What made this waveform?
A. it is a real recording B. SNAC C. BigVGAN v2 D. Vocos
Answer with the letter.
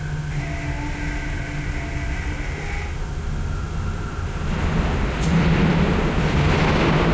A